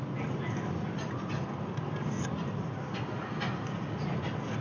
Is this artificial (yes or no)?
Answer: no